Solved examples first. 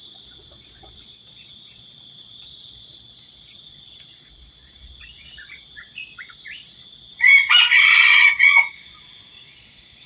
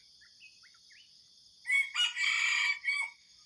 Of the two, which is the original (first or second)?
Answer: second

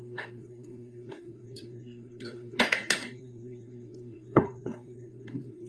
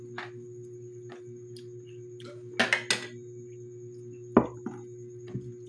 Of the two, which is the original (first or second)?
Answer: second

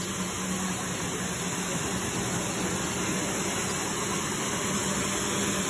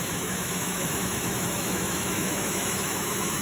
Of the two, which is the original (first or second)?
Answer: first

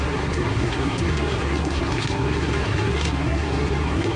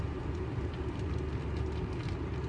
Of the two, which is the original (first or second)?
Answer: second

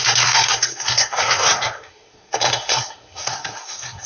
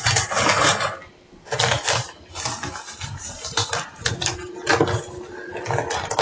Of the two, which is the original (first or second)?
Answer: second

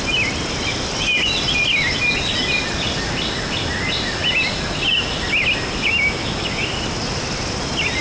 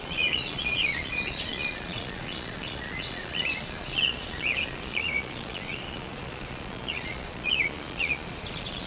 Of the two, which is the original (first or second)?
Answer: first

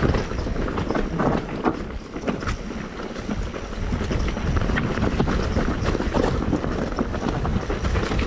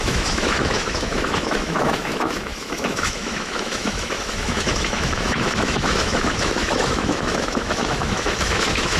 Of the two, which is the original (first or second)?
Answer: first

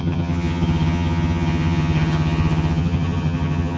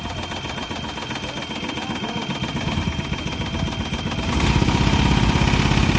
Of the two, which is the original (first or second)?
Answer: second